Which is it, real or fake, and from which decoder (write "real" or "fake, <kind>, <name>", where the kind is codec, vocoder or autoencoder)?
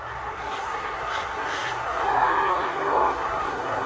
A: fake, codec, SNAC